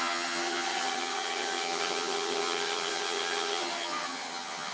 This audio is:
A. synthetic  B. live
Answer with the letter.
A